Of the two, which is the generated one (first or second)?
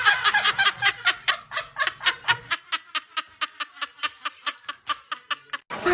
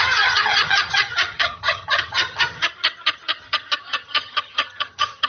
second